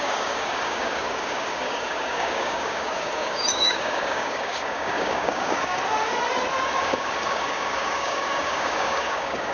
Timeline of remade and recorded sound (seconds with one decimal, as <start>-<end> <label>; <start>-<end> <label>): 0.0-5.8 remade; 5.8-6.8 recorded; 6.8-9.5 remade